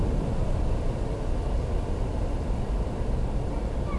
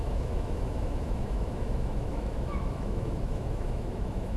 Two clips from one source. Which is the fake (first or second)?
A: second